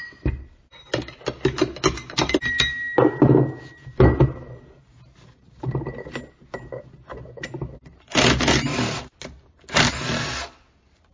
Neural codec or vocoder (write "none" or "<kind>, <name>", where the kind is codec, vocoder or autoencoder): none